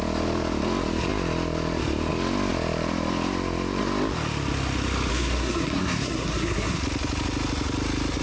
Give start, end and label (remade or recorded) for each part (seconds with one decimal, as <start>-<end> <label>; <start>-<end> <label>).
0.0-5.1 recorded; 5.1-6.8 remade; 6.8-8.2 recorded